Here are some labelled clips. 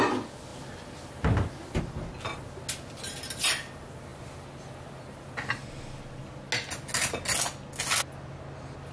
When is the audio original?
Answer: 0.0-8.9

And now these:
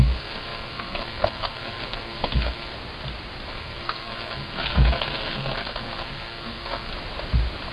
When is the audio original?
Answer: 2.7-3.5; 6.9-7.7